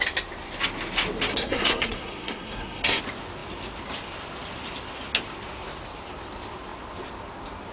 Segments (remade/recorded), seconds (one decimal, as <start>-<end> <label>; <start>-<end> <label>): 0.0-1.3 recorded; 1.3-3.0 remade; 3.0-7.7 recorded